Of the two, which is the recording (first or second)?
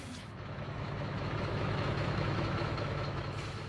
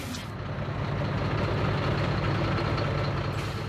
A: second